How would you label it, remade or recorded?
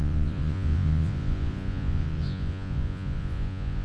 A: remade